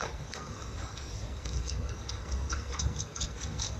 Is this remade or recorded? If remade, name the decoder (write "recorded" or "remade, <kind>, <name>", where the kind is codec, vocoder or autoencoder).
remade, codec, SNAC